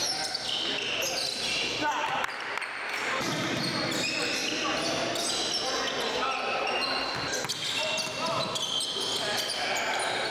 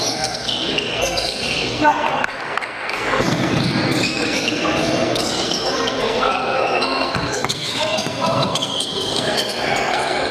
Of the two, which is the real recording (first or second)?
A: first